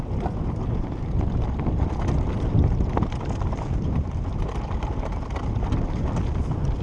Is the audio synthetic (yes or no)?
no